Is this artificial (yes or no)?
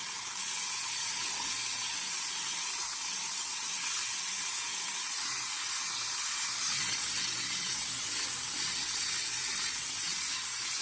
yes